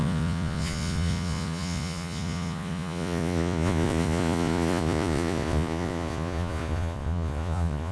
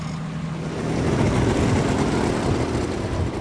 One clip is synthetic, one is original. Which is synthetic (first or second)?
first